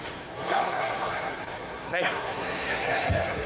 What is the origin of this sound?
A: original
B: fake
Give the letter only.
B